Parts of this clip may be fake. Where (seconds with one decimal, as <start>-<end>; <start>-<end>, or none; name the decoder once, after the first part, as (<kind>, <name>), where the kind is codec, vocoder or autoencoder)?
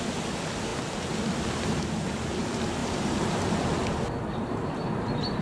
2.8-3.6 (vocoder, BigVGAN v2); 4.3-5.4